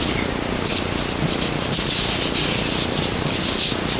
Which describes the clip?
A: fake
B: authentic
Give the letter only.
B